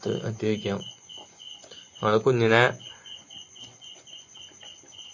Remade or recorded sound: remade